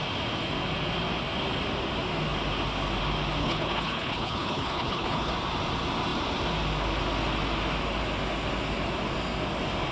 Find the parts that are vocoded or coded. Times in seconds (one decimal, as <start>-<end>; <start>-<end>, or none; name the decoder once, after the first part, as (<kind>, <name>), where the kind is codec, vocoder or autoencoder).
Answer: 3.4-5.3 (codec, HILCodec)

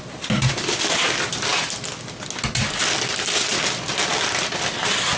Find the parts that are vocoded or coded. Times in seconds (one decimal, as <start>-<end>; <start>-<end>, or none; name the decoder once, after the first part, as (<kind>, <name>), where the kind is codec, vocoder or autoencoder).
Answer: none

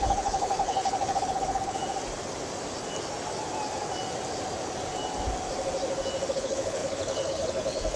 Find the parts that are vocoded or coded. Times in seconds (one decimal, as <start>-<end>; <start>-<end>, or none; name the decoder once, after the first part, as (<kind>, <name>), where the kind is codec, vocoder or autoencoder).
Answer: 0.0-1.8 (codec, HILCodec); 6.3-8.0

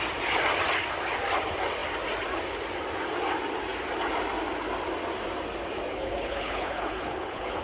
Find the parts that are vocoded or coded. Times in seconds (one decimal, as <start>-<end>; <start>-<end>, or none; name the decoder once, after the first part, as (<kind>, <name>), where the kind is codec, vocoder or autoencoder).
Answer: 5.9-7.6 (codec, HILCodec)